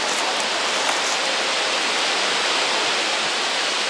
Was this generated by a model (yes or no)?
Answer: no